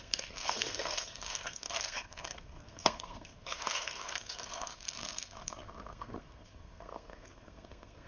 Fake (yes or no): yes